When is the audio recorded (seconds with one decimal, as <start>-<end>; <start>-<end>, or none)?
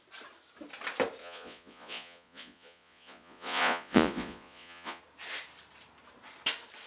0.0-1.2; 5.0-6.9